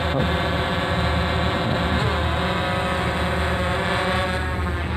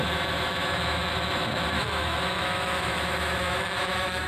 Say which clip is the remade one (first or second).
second